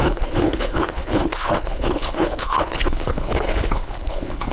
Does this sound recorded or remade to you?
remade